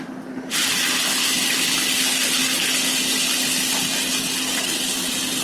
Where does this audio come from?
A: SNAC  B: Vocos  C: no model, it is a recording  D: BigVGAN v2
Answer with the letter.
C